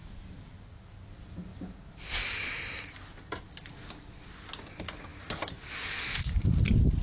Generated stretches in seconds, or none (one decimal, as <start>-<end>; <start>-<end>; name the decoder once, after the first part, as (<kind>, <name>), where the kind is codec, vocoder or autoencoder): none